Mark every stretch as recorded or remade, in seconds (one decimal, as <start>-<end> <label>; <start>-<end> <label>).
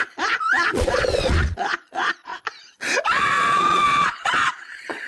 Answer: 0.0-5.1 remade